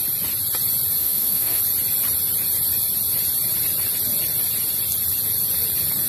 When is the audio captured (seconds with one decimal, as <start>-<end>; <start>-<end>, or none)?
0.0-1.0; 1.6-6.1